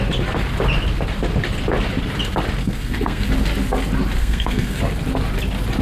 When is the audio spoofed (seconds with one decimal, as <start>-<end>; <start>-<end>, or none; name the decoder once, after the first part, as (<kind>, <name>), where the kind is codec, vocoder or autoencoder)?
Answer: 2.6-3.3 (codec, SNAC); 4.2-4.8